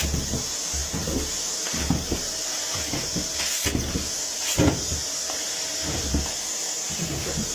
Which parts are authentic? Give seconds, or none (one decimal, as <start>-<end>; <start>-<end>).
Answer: 0.0-4.5; 6.1-7.5